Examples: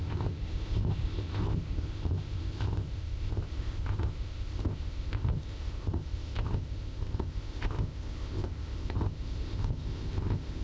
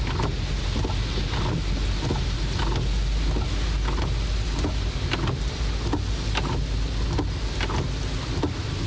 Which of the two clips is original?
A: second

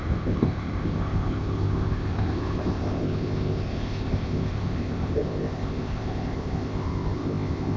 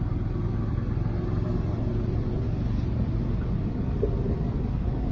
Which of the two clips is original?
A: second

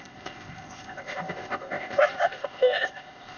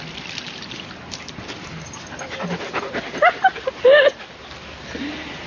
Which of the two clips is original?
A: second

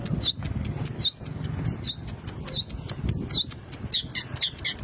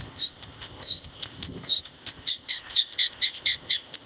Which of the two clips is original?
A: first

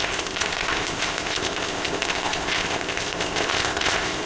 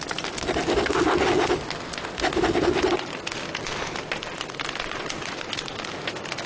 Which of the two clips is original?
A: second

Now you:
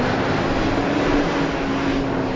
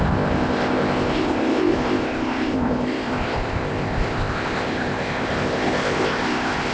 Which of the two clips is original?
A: first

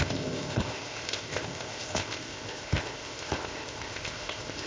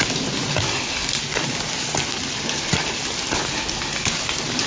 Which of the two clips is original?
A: second